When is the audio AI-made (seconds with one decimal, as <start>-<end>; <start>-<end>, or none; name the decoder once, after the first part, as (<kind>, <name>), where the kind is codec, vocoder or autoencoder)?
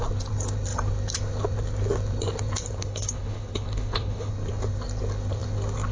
2.8-4.3 (codec, HILCodec)